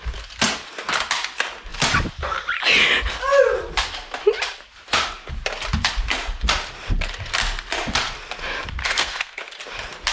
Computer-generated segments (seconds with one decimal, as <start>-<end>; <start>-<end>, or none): 8.8-9.4